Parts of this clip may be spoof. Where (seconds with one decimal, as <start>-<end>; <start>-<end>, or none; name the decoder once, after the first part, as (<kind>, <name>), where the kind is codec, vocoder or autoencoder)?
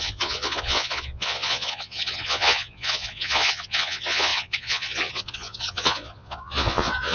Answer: 0.0-7.1 (vocoder, Vocos)